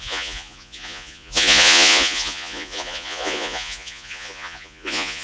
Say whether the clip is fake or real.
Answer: fake